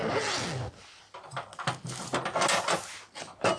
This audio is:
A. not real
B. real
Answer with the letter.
B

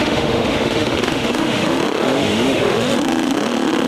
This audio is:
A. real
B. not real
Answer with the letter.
B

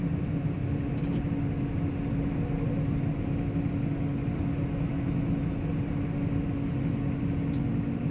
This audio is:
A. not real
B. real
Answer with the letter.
B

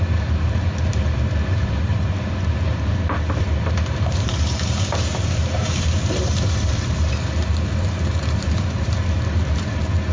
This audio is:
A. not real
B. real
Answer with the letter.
A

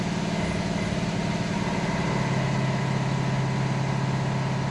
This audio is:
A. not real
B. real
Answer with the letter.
B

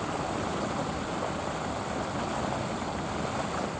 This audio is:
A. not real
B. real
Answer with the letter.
B